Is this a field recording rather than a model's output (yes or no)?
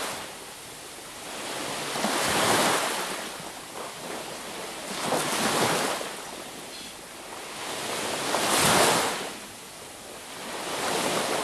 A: yes